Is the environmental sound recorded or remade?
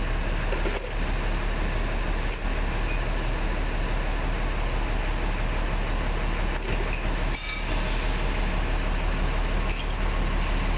recorded